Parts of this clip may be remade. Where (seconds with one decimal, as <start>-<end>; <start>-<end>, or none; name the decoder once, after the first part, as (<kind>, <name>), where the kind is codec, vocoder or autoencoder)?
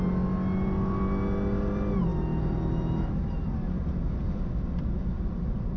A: none